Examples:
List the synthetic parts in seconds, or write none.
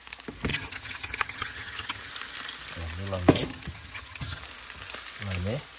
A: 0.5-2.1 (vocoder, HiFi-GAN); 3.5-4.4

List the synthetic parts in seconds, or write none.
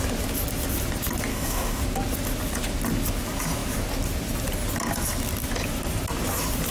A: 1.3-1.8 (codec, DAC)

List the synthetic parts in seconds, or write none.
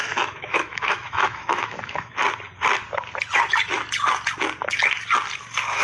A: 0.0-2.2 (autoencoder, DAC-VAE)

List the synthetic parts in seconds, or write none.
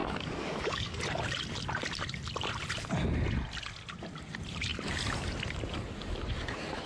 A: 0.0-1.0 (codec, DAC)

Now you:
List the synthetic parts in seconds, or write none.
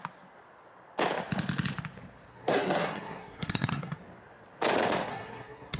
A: 2.3-4.0 (codec, SNAC); 5.1-5.8